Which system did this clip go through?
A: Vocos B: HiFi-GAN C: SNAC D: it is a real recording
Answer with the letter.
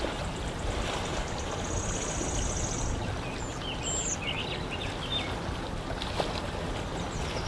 D